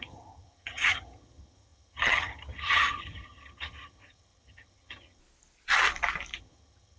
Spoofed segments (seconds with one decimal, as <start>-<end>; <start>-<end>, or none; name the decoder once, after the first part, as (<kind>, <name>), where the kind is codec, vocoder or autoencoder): 0.0-5.2 (vocoder, HiFi-GAN); 6.4-7.0